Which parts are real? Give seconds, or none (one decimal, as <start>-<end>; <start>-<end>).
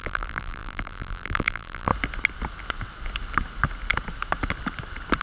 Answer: 1.9-5.2